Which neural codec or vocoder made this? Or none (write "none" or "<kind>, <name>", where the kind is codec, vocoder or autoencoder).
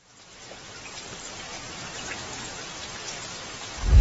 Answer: vocoder, BigVGAN v2